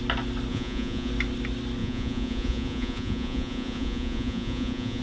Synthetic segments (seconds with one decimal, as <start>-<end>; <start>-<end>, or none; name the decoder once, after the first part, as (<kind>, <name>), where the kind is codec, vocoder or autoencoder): 0.5-1.1 (vocoder, Vocos); 1.8-5.0